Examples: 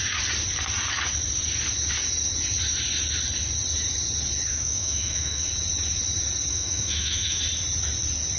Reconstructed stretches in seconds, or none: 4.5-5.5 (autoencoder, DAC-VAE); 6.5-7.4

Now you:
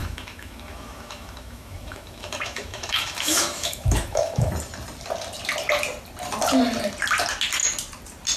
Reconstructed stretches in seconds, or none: 0.0-4.5 (autoencoder, DAC-VAE)

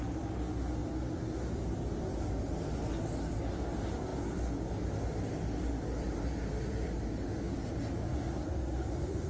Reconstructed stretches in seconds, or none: none

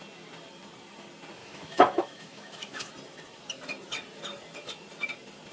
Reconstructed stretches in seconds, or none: 1.4-2.9 (autoencoder, DAC-VAE)

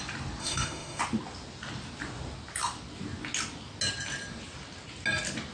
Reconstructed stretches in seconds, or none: 0.4-1.0 (autoencoder, DAC-VAE)

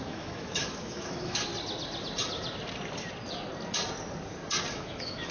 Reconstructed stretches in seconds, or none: 0.0-1.5 (autoencoder, DAC-VAE); 4.7-5.3

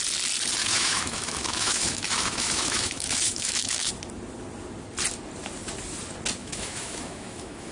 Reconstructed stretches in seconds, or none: 0.6-3.9 (autoencoder, DAC-VAE); 6.4-7.7